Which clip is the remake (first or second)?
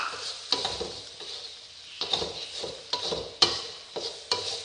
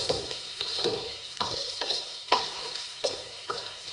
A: second